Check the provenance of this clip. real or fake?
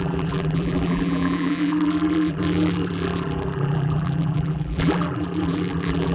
fake